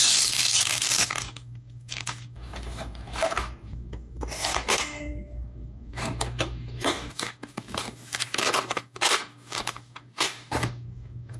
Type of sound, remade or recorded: remade